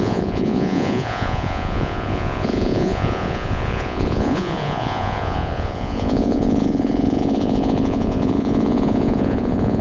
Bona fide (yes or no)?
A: no